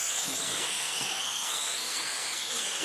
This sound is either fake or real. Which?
fake